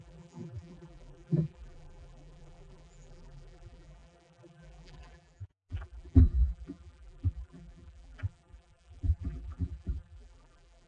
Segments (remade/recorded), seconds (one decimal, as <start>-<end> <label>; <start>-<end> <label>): 0.0-10.9 remade